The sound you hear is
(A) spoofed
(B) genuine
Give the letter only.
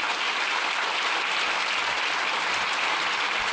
B